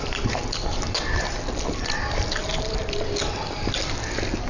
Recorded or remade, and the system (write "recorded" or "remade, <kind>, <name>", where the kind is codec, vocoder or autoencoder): recorded